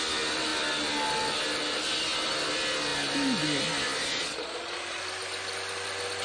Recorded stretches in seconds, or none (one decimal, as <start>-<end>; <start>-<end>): 0.0-4.0; 5.0-6.2